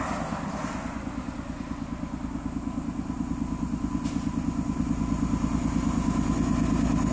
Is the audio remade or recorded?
recorded